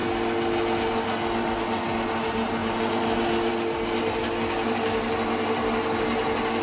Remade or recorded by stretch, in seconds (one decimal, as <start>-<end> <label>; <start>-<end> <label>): 0.0-6.6 recorded